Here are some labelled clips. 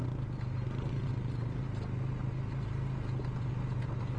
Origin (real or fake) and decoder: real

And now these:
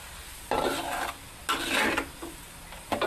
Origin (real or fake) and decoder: real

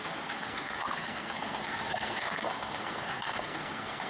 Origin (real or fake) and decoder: fake, codec, SNAC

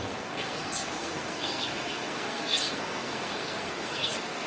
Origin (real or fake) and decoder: fake, codec, SNAC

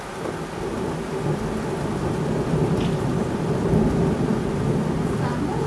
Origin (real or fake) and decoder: real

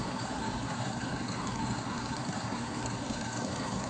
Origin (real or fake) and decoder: fake, codec, SNAC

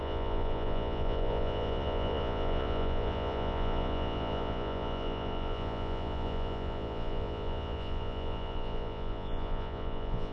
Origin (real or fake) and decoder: fake, vocoder, Vocos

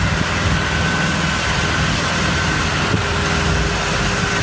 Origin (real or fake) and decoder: real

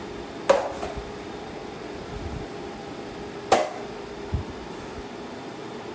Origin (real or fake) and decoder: real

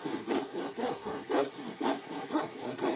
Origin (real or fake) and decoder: fake, codec, SNAC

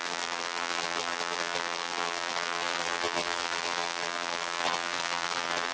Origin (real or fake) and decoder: fake, vocoder, BigVGAN v2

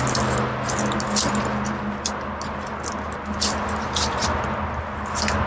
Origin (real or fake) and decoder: real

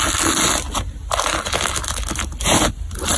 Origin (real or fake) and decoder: real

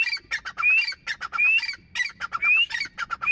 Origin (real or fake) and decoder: real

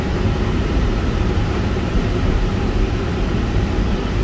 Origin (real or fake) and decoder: fake, vocoder, BigVGAN v2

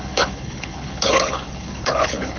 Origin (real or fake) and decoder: fake, codec, HILCodec